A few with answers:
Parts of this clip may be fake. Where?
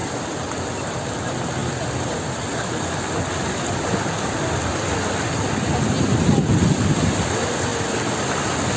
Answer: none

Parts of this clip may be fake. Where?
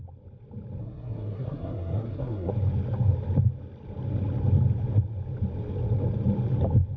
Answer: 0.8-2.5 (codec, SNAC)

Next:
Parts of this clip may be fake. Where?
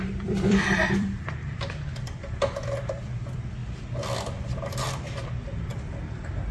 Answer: 0.0-6.5 (vocoder, BigVGAN v2)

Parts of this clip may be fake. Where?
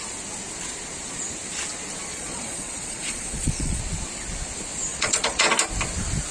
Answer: 2.1-3.8 (vocoder, Vocos); 4.9-5.5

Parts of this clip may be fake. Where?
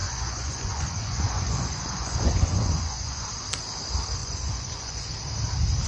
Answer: 0.0-3.3 (vocoder, Vocos); 4.2-5.1